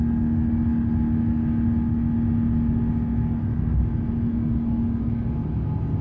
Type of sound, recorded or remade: recorded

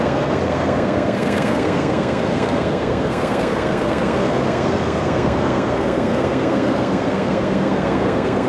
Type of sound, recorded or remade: remade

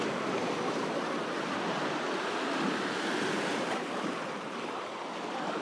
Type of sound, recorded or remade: recorded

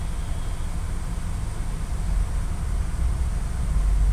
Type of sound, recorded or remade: recorded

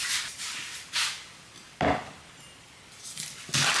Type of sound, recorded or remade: recorded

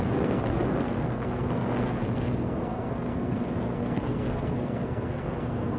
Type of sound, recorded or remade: remade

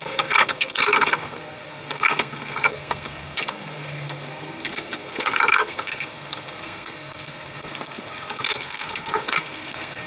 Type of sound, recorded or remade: remade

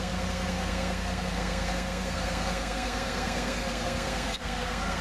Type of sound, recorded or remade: remade